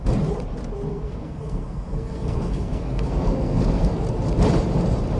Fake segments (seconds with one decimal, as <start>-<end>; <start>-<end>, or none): 0.9-3.9